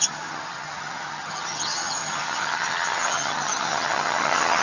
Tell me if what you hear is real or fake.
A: fake